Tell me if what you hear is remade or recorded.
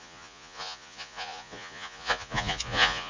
remade